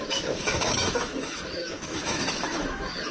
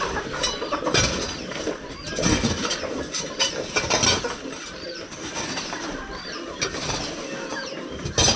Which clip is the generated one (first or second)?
first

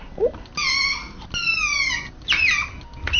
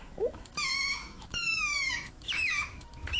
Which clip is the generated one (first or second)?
second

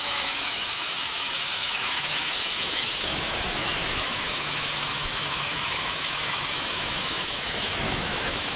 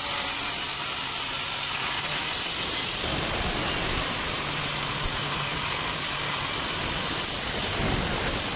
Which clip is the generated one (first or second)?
first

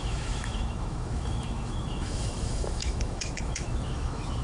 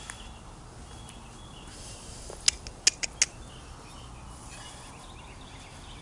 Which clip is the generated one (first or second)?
first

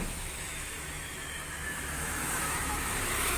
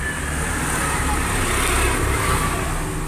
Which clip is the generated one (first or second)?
first